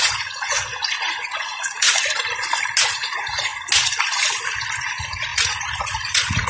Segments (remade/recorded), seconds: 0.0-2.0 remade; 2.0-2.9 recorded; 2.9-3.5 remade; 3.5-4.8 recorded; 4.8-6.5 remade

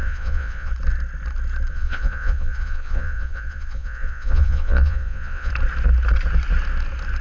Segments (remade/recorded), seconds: 0.0-0.7 remade; 0.7-1.7 recorded; 1.7-5.5 remade; 5.5-7.2 recorded

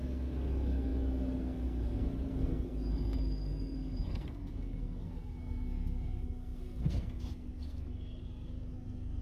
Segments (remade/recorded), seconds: 0.0-9.2 remade